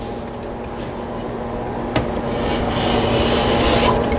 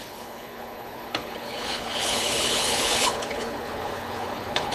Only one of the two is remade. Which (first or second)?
second